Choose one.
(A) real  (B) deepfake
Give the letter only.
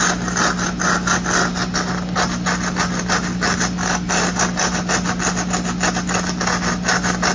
A